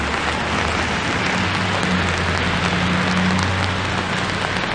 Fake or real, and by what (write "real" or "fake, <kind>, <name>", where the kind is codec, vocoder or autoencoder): real